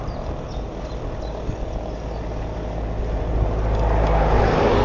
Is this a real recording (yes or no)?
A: yes